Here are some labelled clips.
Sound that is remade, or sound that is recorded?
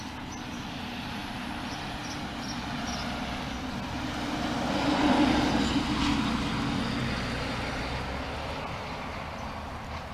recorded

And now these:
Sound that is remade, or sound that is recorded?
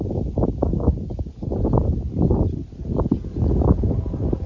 recorded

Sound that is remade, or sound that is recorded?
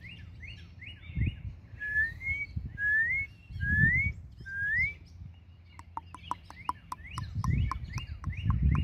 recorded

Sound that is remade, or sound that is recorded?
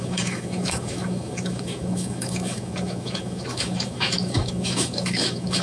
remade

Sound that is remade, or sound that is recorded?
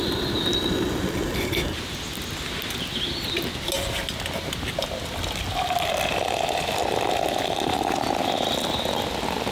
recorded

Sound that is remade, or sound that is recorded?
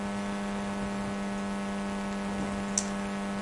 recorded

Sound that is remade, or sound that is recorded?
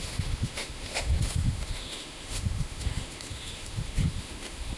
remade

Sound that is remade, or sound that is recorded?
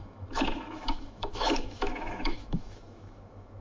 remade